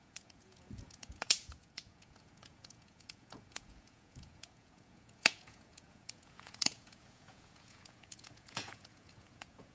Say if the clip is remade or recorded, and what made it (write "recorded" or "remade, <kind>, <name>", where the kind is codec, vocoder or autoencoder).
remade, vocoder, Vocos